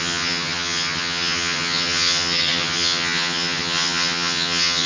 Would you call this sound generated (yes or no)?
yes